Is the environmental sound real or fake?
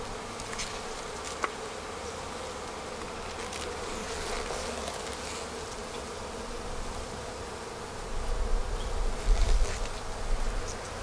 real